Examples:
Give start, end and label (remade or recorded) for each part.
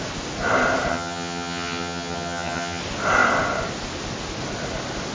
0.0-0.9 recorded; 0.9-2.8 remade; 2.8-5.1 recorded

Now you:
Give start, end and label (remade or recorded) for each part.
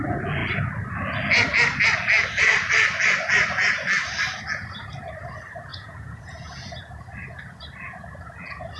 0.0-5.7 recorded; 5.7-6.9 remade; 6.9-8.8 recorded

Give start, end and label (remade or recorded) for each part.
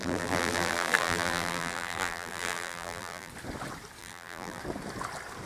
0.0-3.3 remade; 3.3-4.0 recorded; 4.0-4.6 remade; 4.6-5.5 recorded